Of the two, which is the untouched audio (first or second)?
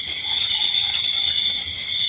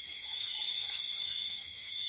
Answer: first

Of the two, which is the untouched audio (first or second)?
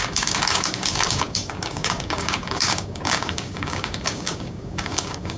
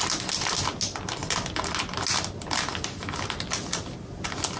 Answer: second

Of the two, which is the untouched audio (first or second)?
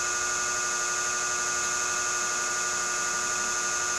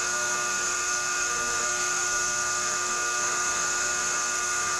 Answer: first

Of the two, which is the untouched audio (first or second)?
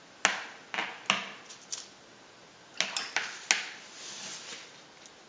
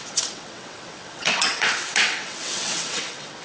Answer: first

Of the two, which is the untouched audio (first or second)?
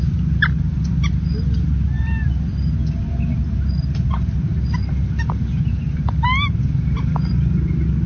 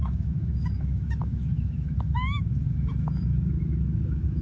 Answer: first